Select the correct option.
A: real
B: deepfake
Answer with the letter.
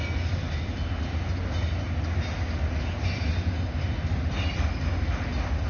A